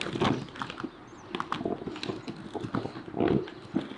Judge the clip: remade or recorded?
recorded